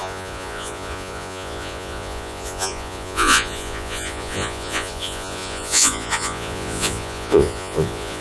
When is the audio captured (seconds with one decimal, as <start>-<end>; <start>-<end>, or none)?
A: none